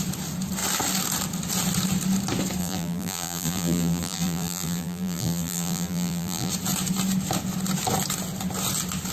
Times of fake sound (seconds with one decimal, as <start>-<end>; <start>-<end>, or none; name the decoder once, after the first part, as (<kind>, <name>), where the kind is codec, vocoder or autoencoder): 2.6-6.5 (vocoder, BigVGAN v2)